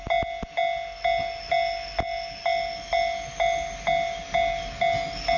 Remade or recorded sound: recorded